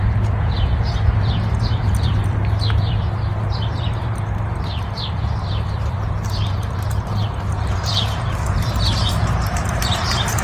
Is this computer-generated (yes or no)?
yes